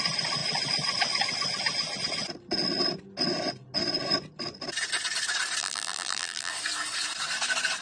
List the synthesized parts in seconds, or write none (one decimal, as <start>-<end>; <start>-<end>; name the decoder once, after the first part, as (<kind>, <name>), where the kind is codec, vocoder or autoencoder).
5.6-6.5 (vocoder, BigVGAN v2)